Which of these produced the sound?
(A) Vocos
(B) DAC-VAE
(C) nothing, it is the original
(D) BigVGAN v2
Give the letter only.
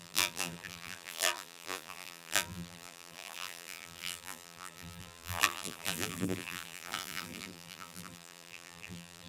D